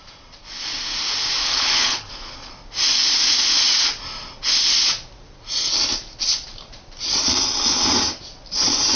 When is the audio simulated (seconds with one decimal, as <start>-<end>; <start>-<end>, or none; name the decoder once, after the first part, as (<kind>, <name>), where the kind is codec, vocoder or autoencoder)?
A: 1.4-2.5 (codec, HILCodec)